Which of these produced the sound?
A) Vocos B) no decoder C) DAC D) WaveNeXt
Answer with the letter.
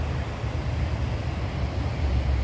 B